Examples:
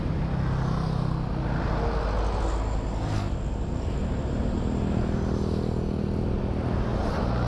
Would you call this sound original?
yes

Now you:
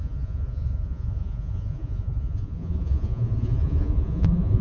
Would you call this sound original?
no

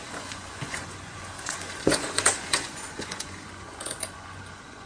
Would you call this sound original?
no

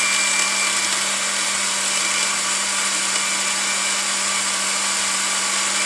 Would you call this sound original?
yes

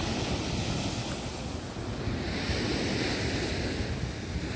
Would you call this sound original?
yes